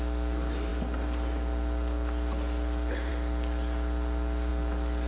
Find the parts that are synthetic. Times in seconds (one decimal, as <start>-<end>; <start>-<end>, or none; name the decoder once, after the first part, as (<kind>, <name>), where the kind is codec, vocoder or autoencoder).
none